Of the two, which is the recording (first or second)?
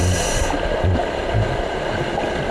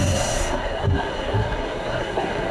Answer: first